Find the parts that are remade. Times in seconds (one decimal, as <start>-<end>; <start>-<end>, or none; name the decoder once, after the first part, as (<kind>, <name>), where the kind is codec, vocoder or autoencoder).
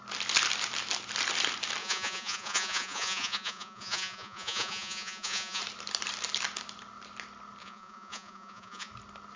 1.8-5.6 (vocoder, Vocos); 7.6-8.9